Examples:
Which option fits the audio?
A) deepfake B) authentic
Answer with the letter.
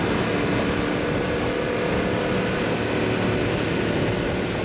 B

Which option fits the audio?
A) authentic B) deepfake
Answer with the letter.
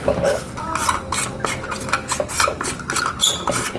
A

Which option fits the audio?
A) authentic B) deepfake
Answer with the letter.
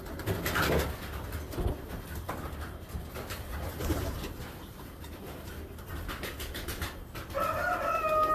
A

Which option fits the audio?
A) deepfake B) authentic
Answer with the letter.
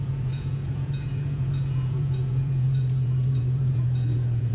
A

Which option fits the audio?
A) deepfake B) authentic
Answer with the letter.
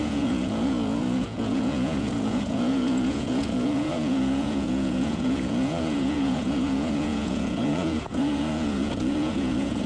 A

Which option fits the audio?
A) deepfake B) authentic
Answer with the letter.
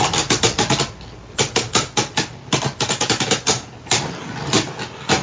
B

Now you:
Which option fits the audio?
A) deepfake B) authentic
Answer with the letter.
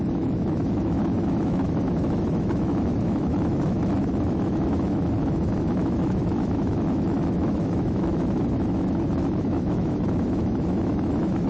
A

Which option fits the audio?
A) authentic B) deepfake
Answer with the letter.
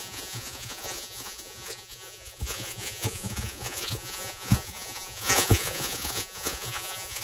B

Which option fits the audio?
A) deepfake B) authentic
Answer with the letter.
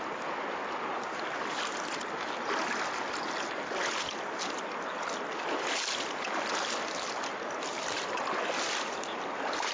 B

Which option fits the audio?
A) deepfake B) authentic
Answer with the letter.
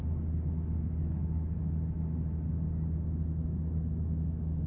B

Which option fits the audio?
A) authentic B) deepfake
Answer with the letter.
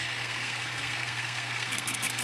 B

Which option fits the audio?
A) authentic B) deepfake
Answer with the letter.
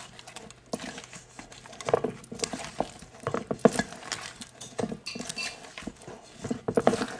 A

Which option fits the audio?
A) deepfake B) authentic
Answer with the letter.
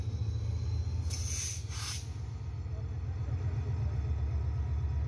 B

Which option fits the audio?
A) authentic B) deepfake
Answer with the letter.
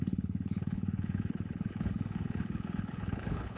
B